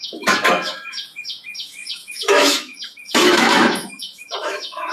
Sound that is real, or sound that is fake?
fake